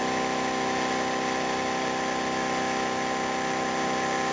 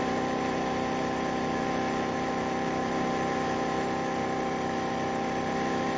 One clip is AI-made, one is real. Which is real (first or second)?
first